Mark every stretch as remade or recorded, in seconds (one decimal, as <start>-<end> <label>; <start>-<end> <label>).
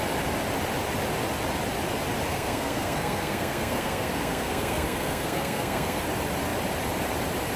0.0-2.3 recorded; 2.3-6.0 remade; 6.0-7.6 recorded